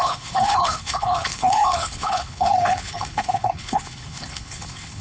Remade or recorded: remade